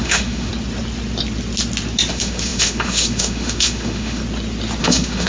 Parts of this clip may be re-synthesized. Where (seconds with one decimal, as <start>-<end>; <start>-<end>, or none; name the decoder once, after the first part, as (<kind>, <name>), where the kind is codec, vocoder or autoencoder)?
0.0-0.5 (autoencoder, DAC-VAE); 2.1-4.2; 4.8-5.3